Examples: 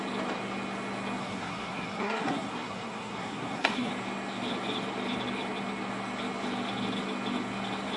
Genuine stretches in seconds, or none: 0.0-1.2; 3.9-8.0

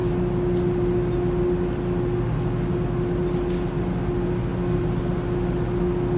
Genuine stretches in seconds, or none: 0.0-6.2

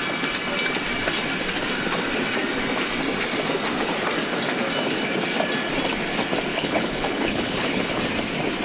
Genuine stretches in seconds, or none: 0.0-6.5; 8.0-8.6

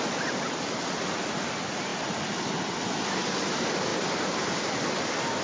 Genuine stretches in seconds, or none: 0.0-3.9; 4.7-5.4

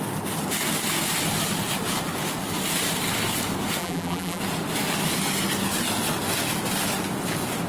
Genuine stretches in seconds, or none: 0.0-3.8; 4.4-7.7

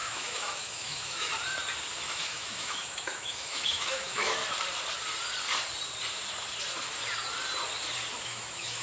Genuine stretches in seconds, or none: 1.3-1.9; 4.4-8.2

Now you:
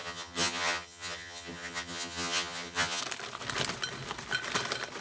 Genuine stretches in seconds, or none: 3.0-5.0